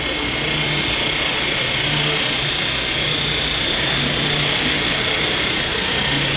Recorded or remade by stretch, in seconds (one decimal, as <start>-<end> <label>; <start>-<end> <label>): 0.0-6.4 recorded